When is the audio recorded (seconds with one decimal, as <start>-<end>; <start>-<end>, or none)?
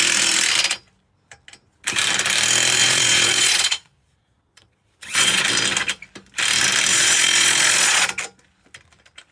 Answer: 0.0-2.8; 5.4-6.9; 8.1-9.3